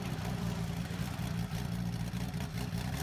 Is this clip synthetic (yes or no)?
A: yes